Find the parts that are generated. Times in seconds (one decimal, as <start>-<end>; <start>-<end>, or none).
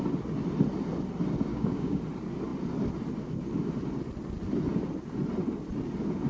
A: 1.5-2.0